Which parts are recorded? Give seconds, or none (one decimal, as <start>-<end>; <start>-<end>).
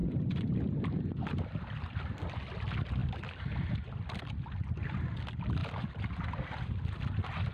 0.0-7.5